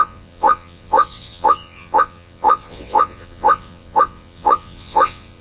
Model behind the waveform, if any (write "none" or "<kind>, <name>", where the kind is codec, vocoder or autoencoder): vocoder, WaveNeXt